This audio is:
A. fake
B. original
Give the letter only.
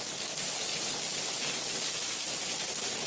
B